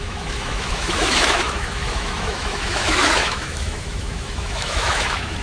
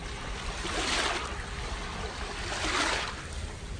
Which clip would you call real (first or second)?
second